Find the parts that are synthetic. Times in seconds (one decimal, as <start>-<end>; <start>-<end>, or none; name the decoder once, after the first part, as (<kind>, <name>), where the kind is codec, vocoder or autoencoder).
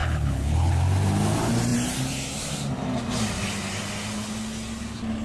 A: 0.0-0.7 (codec, HILCodec)